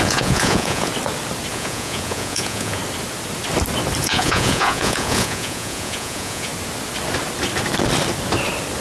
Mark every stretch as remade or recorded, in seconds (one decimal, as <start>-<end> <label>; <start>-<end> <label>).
0.0-0.9 remade; 0.9-1.5 recorded; 1.5-2.8 remade; 2.8-4.0 recorded; 4.0-6.5 remade; 6.5-8.8 recorded